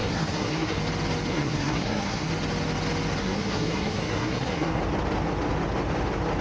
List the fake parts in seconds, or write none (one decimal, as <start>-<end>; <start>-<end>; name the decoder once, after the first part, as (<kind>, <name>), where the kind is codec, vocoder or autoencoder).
0.0-0.8 (codec, SNAC); 1.3-2.3; 3.2-4.8